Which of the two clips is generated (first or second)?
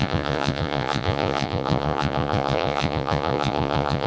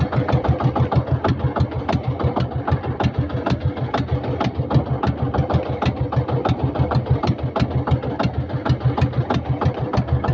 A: first